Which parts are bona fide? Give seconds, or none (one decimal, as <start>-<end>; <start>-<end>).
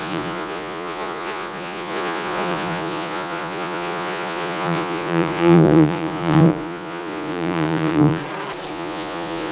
8.2-8.7